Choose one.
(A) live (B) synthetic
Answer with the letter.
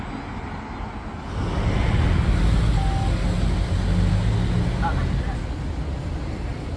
A